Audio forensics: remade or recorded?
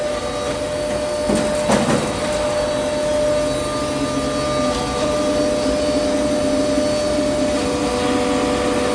recorded